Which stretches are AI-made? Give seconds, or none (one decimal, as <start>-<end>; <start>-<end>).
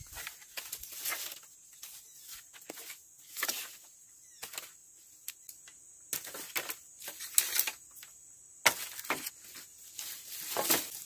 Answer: none